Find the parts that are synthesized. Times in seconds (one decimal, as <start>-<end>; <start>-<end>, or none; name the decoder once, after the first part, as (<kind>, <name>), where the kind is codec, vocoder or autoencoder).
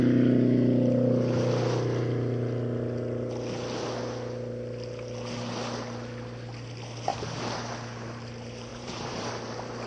8.7-9.3 (vocoder, BigVGAN v2)